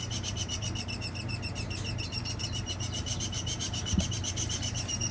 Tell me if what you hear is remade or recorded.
remade